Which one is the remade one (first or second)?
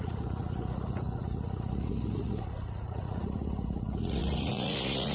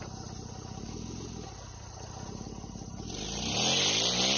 first